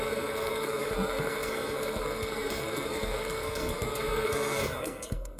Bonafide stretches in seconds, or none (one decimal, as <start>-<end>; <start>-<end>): none